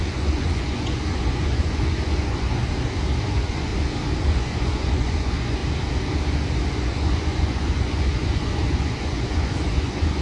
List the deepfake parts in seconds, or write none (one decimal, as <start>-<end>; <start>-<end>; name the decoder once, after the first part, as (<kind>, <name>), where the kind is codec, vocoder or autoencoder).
0.0-2.6 (vocoder, Vocos); 3.2-3.7; 4.2-5.6; 6.7-10.2